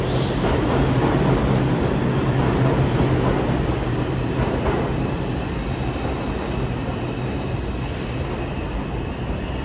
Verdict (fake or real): real